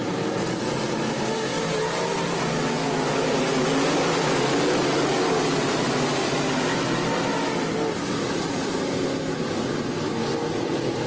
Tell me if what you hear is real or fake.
real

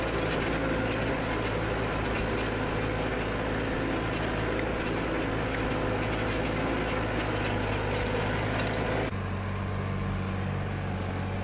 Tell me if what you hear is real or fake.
real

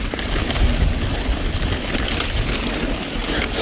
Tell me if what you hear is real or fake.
real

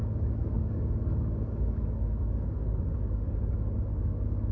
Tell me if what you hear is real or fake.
fake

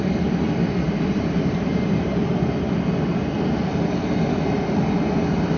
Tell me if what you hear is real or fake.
real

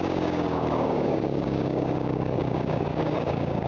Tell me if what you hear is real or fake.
fake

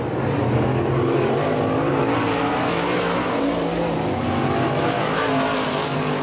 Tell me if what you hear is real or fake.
real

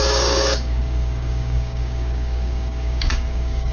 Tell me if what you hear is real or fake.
fake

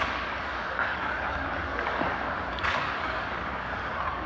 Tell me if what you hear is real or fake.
fake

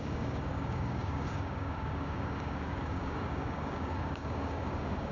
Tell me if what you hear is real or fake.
fake